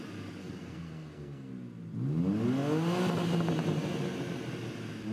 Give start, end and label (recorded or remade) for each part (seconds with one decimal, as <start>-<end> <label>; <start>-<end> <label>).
0.0-0.4 recorded; 0.4-1.5 remade; 1.5-5.1 recorded